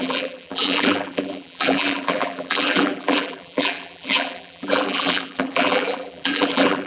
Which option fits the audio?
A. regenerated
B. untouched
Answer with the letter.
A